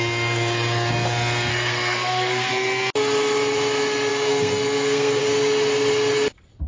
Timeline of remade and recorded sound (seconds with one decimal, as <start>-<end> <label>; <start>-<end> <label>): 0.0-1.5 recorded; 1.5-2.5 remade; 2.5-4.1 recorded; 4.1-5.2 remade; 5.2-6.7 recorded